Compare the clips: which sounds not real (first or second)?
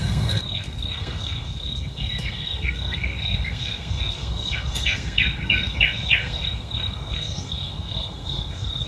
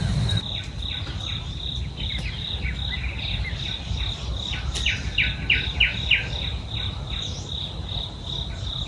first